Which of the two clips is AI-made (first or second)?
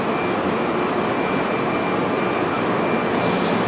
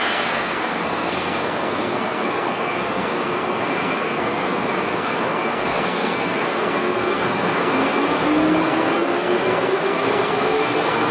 second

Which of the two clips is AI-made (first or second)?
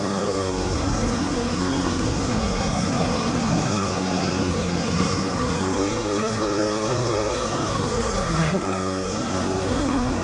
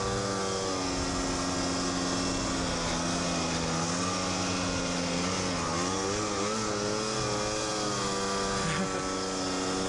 first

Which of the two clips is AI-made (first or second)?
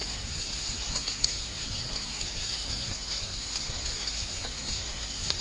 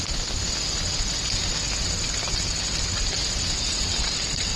first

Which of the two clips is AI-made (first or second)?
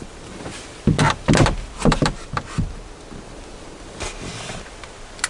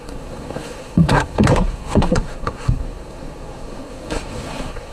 second